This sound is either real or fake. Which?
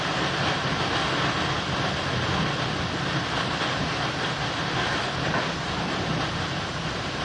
real